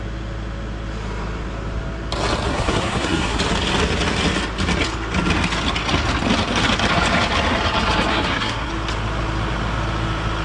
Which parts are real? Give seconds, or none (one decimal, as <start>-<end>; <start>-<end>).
0.0-2.5; 3.4-8.1; 8.7-10.4